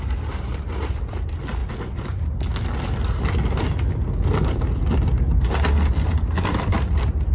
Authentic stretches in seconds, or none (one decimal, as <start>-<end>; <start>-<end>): 1.6-6.0